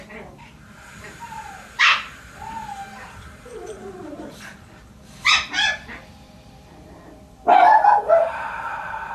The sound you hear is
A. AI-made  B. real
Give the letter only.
A